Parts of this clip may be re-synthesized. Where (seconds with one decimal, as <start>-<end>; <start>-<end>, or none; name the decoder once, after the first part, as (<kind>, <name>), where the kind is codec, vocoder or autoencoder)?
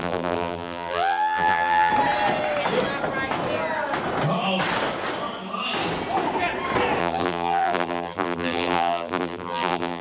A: 0.0-1.9 (vocoder, BigVGAN v2); 7.0-10.0